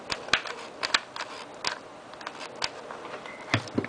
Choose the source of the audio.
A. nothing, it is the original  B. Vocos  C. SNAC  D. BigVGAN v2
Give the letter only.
A